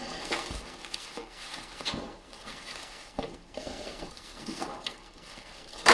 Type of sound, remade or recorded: remade